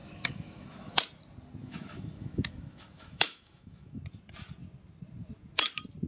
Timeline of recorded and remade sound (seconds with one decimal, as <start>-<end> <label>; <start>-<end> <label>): 0.0-0.9 remade; 0.9-1.6 recorded; 1.6-4.0 remade; 4.0-6.1 recorded